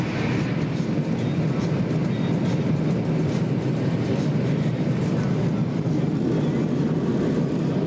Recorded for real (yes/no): yes